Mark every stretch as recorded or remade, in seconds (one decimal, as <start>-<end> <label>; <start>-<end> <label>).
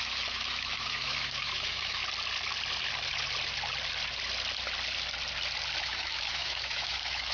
0.0-2.0 remade; 2.0-5.8 recorded; 5.8-7.3 remade